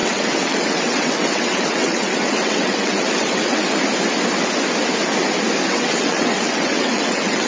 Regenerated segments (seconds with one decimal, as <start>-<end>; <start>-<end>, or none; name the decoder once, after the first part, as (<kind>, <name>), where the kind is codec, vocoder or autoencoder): 0.0-3.6 (vocoder, WaveNeXt); 5.7-7.5